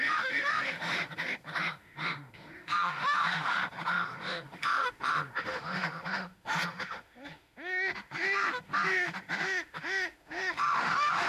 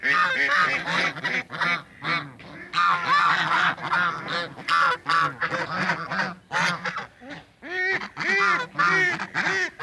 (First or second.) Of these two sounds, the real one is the second